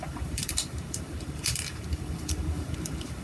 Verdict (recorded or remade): remade